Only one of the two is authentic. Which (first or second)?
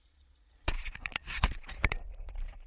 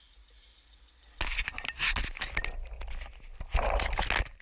second